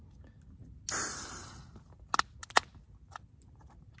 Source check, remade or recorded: recorded